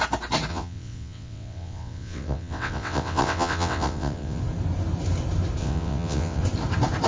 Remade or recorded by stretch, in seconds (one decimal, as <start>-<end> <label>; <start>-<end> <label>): 0.0-0.5 recorded; 0.5-4.4 remade; 4.4-5.6 recorded; 5.6-6.4 remade; 6.4-7.1 recorded